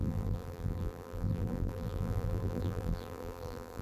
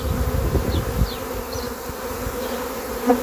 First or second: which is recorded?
second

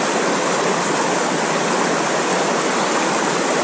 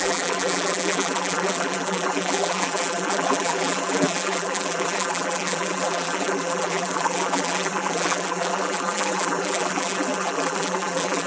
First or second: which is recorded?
first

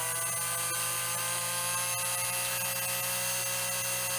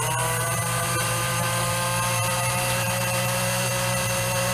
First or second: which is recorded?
first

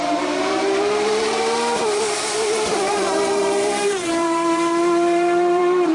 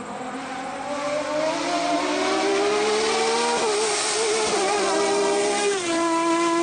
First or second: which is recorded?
second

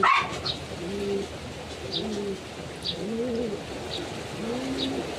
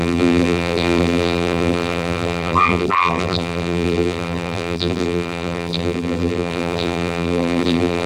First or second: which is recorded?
first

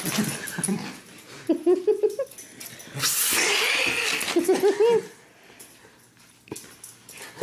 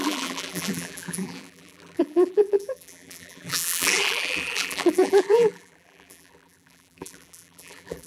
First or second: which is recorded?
first